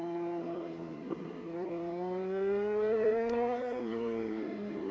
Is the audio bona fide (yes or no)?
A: no